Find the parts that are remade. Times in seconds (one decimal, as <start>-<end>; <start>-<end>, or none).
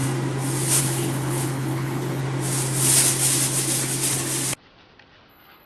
0.8-2.2; 5.3-5.7